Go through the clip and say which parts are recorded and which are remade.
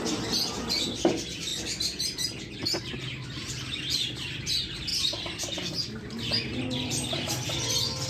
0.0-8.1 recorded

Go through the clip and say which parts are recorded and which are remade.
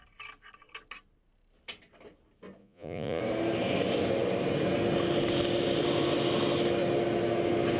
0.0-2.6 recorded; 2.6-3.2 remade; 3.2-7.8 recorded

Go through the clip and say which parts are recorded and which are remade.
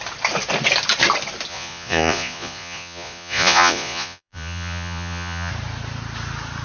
0.0-1.5 recorded; 1.5-5.5 remade; 5.5-6.6 recorded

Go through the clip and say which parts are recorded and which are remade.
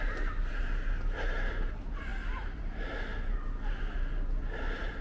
0.0-5.0 recorded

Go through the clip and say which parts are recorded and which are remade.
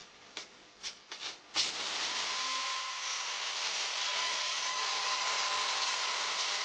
0.0-1.4 remade; 1.4-3.9 recorded; 3.9-6.1 remade; 6.1-6.6 recorded